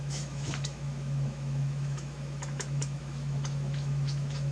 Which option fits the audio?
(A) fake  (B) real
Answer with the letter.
A